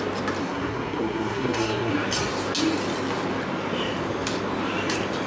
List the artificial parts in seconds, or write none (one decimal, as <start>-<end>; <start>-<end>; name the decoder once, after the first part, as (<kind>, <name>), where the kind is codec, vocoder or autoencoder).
0.4-1.9 (codec, SNAC)

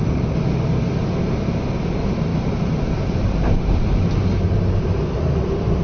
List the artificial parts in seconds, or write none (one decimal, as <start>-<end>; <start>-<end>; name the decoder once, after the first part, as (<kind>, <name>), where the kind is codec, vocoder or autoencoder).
3.2-3.9 (vocoder, BigVGAN v2); 4.3-5.8

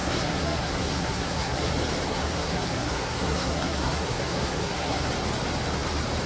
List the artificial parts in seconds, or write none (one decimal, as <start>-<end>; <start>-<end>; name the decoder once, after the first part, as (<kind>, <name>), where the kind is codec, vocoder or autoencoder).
0.0-1.7 (codec, SNAC); 2.1-5.1

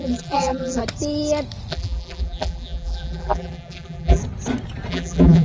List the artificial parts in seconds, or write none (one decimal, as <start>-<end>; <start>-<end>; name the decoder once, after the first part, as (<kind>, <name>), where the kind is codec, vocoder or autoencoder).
0.0-0.8 (vocoder, BigVGAN v2); 1.7-4.2; 4.9-5.4

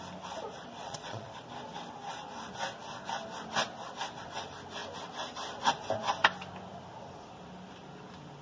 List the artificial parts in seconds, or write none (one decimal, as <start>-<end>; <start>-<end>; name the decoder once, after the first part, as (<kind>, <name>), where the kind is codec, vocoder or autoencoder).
0.8-1.4 (vocoder, Vocos)

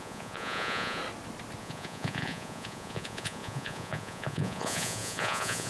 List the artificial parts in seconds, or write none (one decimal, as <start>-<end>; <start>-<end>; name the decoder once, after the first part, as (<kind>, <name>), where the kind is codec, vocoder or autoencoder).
0.0-1.0 (vocoder, Vocos); 1.6-5.7